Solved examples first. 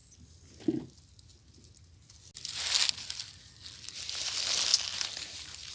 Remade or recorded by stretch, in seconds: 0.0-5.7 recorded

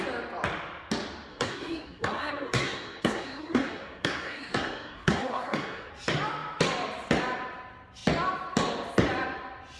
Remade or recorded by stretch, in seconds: 0.0-1.3 recorded; 1.3-5.9 remade; 5.9-9.8 recorded

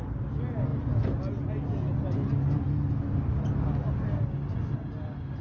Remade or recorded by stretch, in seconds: 0.0-5.4 recorded

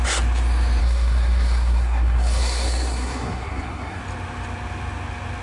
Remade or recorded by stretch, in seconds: 0.0-0.8 recorded; 0.8-4.0 remade; 4.0-5.4 recorded

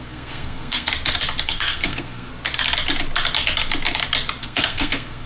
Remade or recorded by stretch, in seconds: 0.0-0.9 remade; 0.9-1.4 recorded; 1.4-2.3 remade; 2.3-4.4 recorded; 4.4-5.3 remade

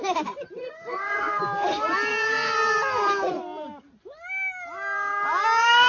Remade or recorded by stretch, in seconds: 0.0-0.6 recorded; 0.6-1.4 remade; 1.4-5.9 recorded

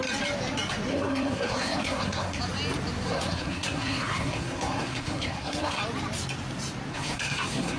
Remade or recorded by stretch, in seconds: 0.0-0.9 recorded; 0.9-2.4 remade; 2.4-3.0 recorded; 3.0-5.8 remade; 5.8-6.9 recorded; 6.9-7.8 remade